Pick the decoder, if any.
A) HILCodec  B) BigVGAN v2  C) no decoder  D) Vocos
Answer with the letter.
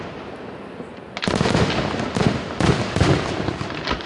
C